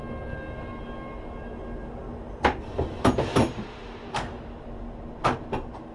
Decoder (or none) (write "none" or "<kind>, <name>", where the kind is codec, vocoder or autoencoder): none